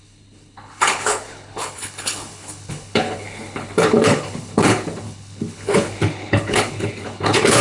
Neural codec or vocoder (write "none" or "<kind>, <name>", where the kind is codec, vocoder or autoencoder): codec, HILCodec